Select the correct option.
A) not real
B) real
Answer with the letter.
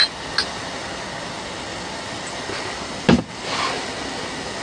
B